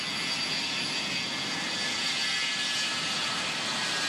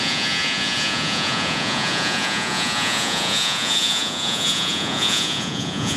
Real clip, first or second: first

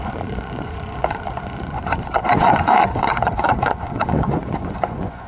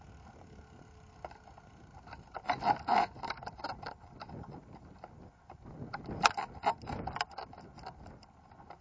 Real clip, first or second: second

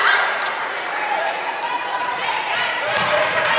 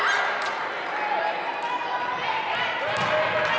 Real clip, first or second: second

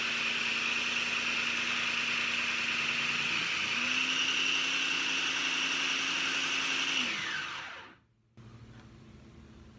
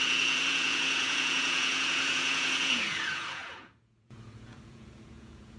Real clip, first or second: first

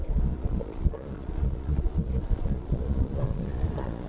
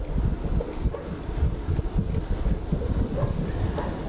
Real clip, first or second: second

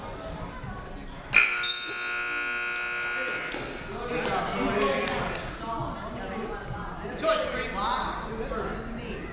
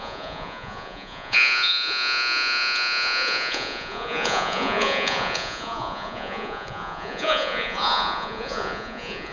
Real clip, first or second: first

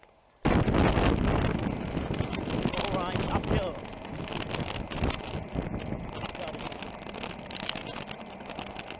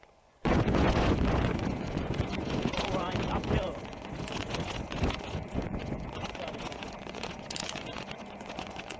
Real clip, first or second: first